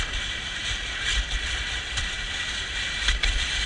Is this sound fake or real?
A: real